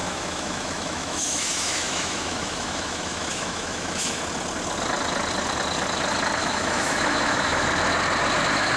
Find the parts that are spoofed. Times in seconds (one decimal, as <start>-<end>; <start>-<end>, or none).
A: 0.0-4.2; 6.4-7.7